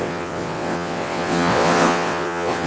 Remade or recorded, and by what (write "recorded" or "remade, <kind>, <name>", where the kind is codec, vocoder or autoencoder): remade, vocoder, WaveNeXt